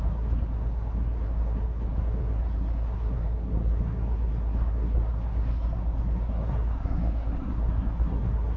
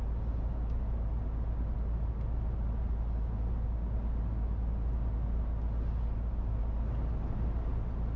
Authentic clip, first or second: second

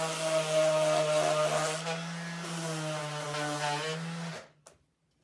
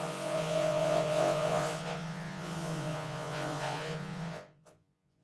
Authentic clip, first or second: first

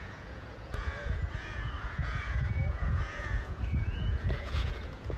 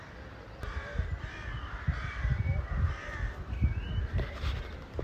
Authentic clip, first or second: second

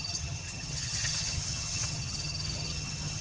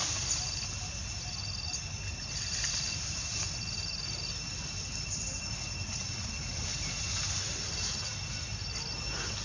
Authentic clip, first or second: second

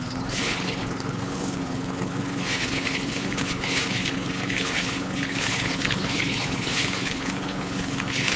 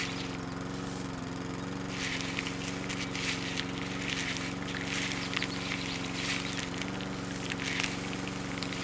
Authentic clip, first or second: second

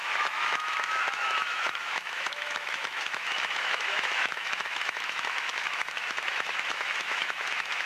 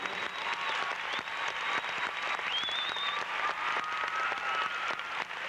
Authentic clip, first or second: second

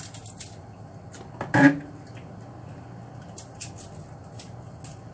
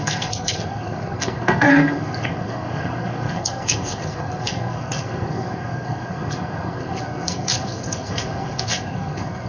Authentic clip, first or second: first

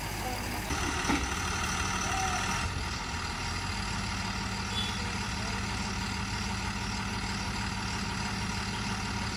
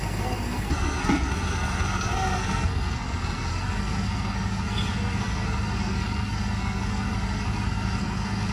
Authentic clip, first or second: first